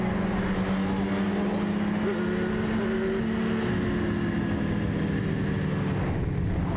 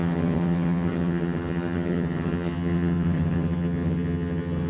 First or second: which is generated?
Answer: second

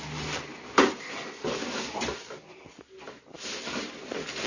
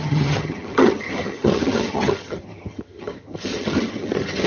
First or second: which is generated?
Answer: second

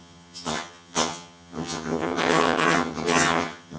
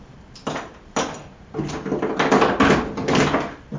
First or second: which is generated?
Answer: first